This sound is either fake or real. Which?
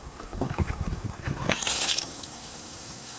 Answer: fake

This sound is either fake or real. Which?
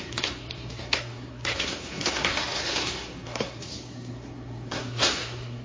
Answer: fake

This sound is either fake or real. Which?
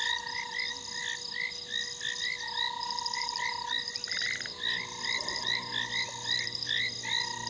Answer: real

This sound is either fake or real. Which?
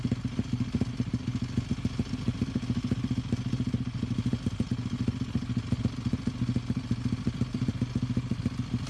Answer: real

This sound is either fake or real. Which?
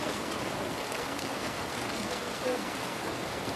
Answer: fake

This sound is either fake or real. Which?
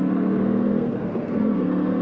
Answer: fake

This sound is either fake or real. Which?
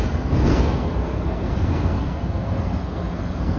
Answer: fake